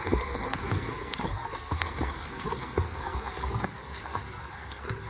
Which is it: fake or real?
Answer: fake